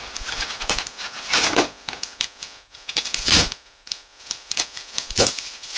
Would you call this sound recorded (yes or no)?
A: no